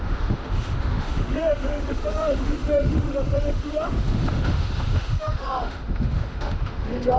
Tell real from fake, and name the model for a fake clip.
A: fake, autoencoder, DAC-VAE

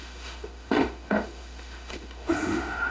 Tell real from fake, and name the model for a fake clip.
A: fake, autoencoder, DAC-VAE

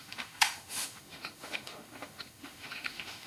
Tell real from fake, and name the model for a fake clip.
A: fake, autoencoder, DAC-VAE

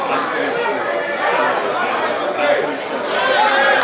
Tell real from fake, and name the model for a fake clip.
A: real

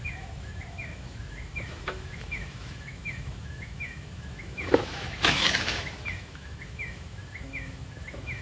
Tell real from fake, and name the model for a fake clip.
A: fake, autoencoder, DAC-VAE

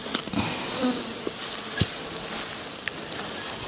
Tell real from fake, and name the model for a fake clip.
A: real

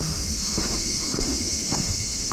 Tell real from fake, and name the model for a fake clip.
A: fake, autoencoder, DAC-VAE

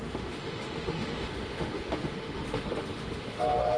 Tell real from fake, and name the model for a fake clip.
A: fake, autoencoder, DAC-VAE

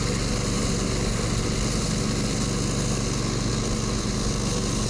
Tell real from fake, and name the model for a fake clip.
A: real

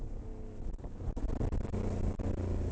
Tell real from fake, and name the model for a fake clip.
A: real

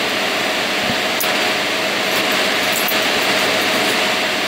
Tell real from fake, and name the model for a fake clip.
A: real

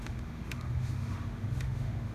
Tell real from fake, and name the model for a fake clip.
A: fake, autoencoder, DAC-VAE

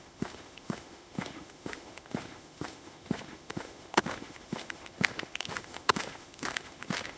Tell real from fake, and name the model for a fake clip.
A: fake, autoencoder, DAC-VAE